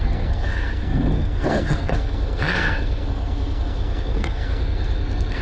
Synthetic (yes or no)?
yes